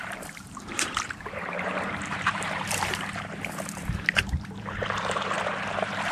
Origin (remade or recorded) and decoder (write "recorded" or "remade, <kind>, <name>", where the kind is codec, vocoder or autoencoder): remade, vocoder, BigVGAN v2